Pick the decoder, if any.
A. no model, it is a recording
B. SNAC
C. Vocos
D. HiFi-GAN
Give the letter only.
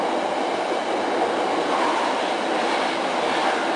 A